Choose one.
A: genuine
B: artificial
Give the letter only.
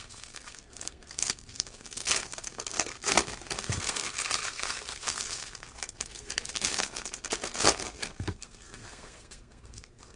B